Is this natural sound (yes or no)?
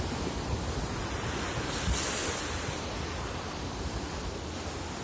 yes